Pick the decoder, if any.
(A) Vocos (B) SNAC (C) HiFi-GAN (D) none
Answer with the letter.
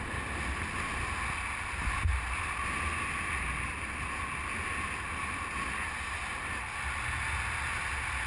D